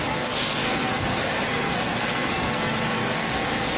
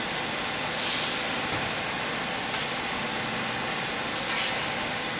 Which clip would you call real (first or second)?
second